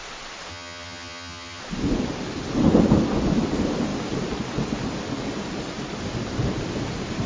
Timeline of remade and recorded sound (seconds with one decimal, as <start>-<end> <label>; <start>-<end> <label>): 0.0-0.5 recorded; 0.5-1.6 remade; 1.6-7.3 recorded